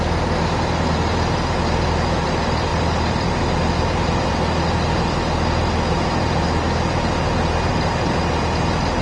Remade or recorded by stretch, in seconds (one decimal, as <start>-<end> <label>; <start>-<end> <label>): 0.0-2.7 recorded; 2.7-3.5 remade; 3.5-9.0 recorded